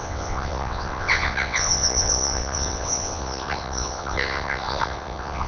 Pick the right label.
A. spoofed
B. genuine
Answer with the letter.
A